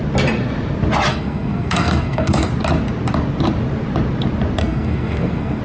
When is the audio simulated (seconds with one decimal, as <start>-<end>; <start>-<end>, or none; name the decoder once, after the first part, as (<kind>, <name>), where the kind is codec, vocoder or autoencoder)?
1.1-2.5 (codec, SNAC); 4.6-5.6